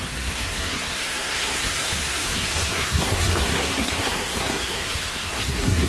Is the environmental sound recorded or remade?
remade